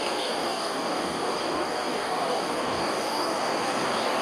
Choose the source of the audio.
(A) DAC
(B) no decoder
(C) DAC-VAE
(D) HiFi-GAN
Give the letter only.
A